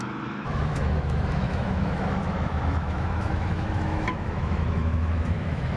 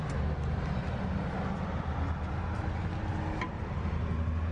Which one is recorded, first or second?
second